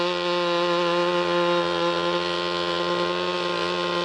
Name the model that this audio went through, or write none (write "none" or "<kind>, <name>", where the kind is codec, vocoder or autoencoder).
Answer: none